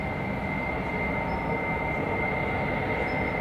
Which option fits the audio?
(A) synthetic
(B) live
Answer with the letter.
B